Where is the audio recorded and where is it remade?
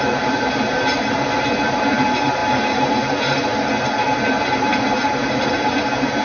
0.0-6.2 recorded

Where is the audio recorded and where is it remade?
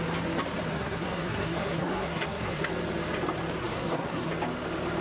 0.0-0.7 recorded; 0.7-2.7 remade; 2.7-3.6 recorded; 3.6-4.3 remade; 4.3-5.0 recorded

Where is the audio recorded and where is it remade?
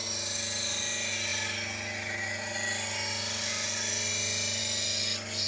0.0-5.5 recorded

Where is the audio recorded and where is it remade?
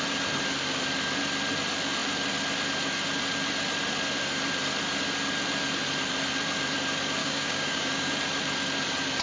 0.0-7.2 recorded; 7.2-8.1 remade; 8.1-9.2 recorded